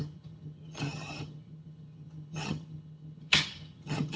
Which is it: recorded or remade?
remade